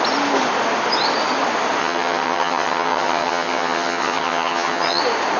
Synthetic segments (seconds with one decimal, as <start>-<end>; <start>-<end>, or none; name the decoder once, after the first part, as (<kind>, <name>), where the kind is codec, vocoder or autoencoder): 1.8-5.0 (vocoder, HiFi-GAN)